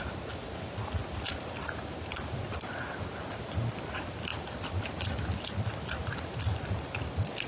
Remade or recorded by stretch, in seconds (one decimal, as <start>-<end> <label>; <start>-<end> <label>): 0.0-7.5 recorded